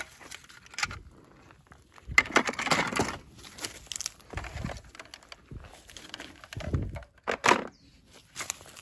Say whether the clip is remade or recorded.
recorded